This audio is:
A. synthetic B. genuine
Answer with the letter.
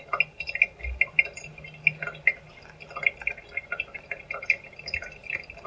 B